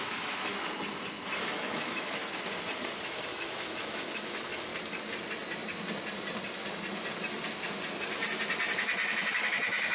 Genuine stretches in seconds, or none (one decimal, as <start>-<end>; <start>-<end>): 0.5-1.4; 2.2-3.0; 4.7-9.3